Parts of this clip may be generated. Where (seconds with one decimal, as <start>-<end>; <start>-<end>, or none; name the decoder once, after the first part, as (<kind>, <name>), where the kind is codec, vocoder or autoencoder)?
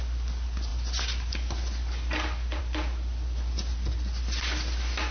none